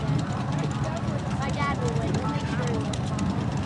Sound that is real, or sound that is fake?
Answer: fake